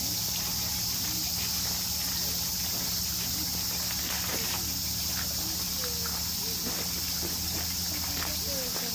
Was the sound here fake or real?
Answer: real